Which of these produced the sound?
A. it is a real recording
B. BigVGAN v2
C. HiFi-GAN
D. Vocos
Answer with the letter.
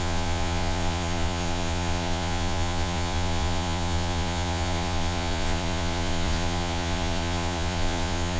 D